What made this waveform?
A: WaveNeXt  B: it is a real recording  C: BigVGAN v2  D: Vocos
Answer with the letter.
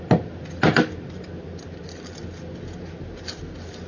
B